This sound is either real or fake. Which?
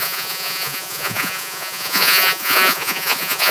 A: fake